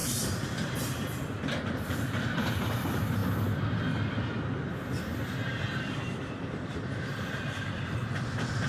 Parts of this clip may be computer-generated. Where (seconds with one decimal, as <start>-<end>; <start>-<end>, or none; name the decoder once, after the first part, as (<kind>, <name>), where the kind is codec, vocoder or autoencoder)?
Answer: 0.0-3.2 (vocoder, BigVGAN v2); 5.8-8.7